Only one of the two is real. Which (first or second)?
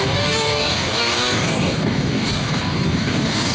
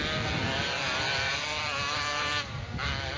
second